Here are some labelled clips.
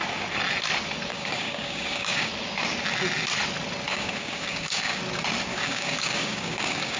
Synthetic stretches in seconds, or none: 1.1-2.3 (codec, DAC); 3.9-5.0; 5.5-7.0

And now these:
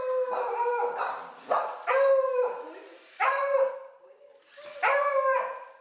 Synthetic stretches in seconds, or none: 3.7-4.3 (codec, DAC)

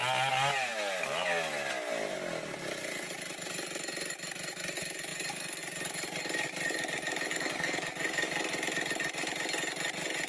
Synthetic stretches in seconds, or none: 7.3-8.4 (codec, DAC)

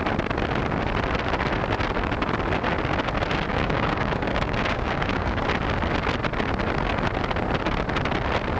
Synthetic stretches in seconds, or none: 3.5-5.4 (codec, DAC)